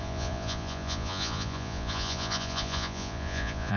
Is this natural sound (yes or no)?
no